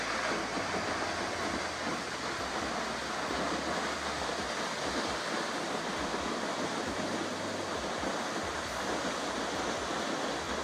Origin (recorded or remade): recorded